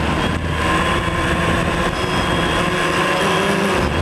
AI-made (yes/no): no